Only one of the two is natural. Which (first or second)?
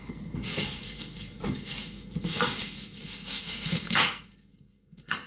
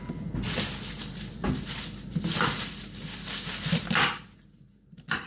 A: second